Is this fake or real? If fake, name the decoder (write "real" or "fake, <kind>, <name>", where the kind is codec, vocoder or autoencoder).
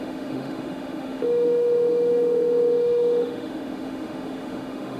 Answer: fake, autoencoder, DAC-VAE